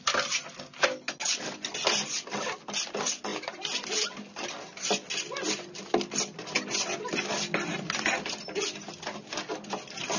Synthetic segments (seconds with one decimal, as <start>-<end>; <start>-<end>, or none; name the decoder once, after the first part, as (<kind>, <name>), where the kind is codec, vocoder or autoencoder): none